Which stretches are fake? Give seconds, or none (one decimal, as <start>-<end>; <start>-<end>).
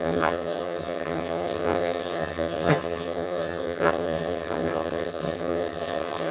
0.0-6.3